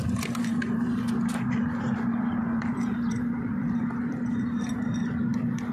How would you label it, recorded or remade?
remade